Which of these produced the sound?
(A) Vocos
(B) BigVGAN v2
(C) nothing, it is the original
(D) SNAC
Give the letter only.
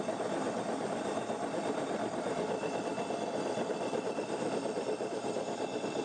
C